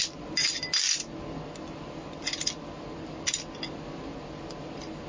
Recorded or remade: recorded